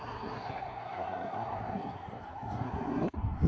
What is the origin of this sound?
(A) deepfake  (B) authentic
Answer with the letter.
A